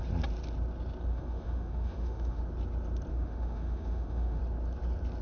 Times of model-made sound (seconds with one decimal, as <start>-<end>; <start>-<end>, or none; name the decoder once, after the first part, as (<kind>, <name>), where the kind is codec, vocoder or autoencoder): 1.1-2.4 (autoencoder, DAC-VAE); 3.1-4.4